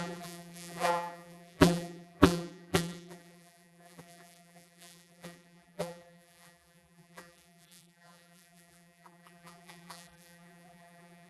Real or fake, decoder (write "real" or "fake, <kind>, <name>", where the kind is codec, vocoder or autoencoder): fake, vocoder, BigVGAN v2